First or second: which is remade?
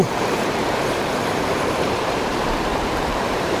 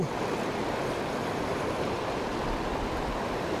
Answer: first